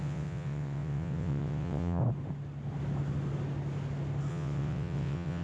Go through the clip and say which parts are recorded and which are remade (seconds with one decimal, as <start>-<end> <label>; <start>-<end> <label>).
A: 0.0-2.0 remade; 2.0-4.3 recorded; 4.3-5.4 remade